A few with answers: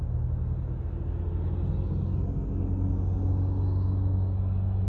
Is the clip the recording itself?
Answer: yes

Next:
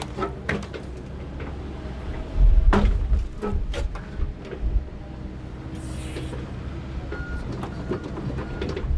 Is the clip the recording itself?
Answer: yes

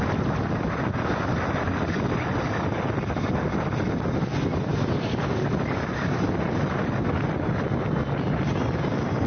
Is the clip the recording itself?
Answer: yes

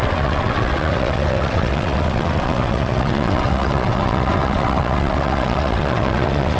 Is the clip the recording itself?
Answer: no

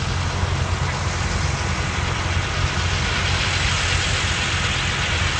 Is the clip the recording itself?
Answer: yes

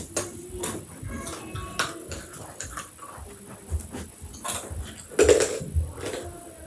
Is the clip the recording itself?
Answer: yes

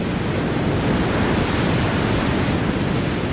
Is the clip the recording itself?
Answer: yes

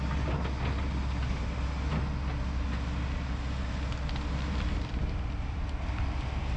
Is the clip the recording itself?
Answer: yes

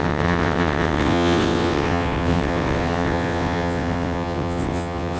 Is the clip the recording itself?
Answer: no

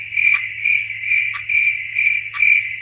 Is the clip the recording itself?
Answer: yes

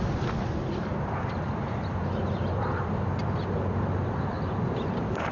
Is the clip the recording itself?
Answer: yes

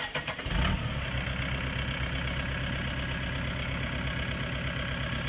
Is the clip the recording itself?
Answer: yes